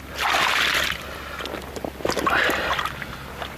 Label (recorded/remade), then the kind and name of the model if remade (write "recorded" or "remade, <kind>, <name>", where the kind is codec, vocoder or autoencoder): recorded